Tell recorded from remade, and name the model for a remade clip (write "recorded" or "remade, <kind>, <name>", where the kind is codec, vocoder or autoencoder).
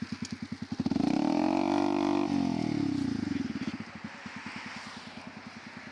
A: recorded